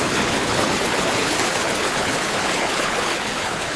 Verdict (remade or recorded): remade